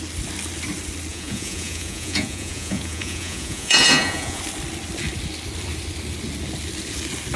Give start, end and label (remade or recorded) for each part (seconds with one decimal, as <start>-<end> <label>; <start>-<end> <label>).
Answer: 0.0-1.1 recorded; 1.1-4.4 remade; 4.4-7.4 recorded